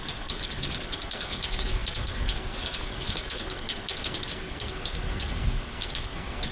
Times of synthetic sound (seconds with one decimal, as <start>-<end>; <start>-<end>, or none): 0.0-6.5